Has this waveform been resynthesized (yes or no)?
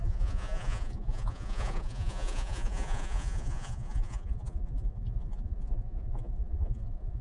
yes